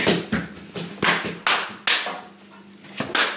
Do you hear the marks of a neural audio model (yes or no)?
no